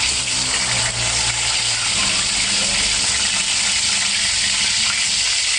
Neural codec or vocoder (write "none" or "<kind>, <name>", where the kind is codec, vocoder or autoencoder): none